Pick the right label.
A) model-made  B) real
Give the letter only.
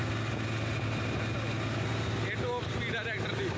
B